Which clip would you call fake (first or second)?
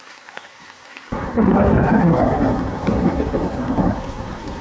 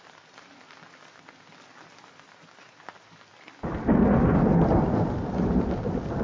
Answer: first